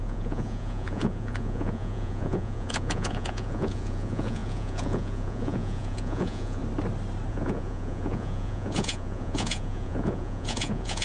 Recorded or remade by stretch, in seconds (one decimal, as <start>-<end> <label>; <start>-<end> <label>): 0.0-6.6 remade; 6.6-7.3 recorded; 7.3-11.0 remade